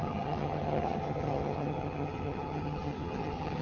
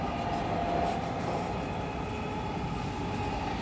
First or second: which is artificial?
first